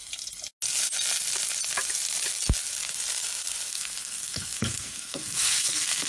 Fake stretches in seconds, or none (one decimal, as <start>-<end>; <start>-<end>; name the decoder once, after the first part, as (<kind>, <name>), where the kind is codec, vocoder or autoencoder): 3.7-6.1 (codec, SNAC)